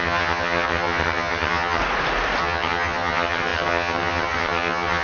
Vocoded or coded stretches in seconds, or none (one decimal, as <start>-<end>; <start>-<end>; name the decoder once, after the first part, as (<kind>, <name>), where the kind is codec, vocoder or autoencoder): 0.0-1.8 (vocoder, HiFi-GAN); 2.4-5.0